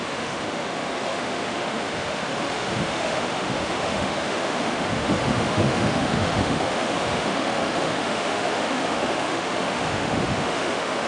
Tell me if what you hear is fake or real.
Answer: fake